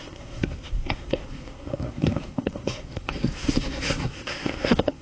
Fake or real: fake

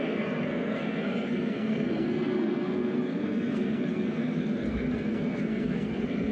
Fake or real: fake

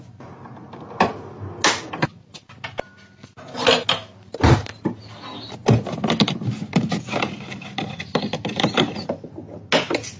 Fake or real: real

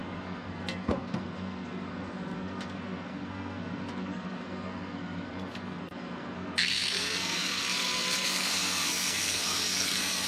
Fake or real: fake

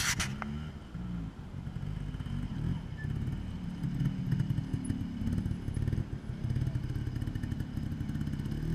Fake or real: real